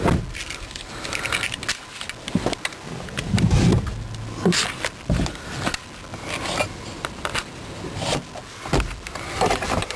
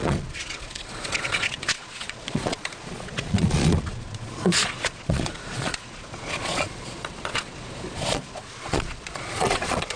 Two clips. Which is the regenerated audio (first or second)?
second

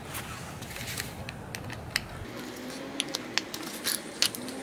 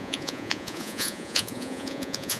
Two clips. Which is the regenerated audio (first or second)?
second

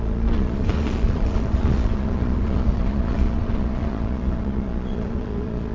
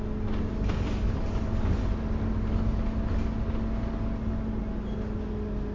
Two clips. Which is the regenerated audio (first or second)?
first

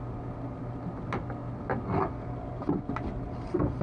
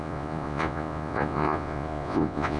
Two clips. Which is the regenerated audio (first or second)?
second